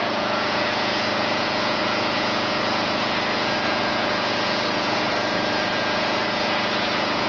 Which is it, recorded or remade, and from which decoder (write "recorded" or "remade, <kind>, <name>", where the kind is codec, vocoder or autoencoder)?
remade, vocoder, Vocos